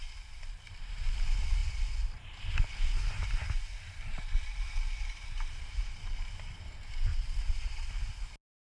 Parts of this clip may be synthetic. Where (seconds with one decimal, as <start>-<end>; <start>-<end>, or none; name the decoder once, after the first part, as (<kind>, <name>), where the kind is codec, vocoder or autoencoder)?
7.1-7.9 (vocoder, Vocos)